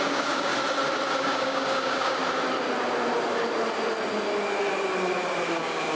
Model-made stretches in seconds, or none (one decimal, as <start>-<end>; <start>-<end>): 0.0-0.5; 1.2-2.2; 5.6-6.0